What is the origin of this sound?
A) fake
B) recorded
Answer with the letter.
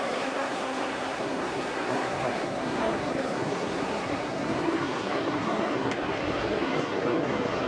A